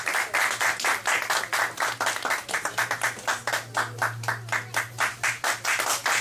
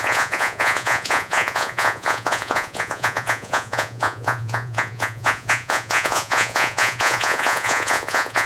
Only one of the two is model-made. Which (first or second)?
second